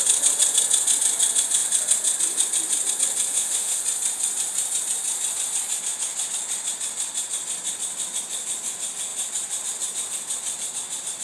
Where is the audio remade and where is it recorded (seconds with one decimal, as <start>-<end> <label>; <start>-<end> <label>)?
0.0-3.3 recorded; 3.3-3.8 remade; 3.8-11.2 recorded